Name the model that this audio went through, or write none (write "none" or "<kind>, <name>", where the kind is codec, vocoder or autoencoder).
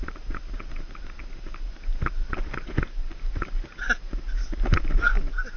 none